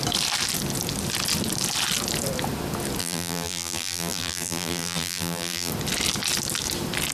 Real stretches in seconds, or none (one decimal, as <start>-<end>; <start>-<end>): 0.0-3.0; 5.7-7.1